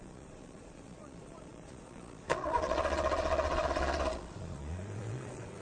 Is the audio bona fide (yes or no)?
no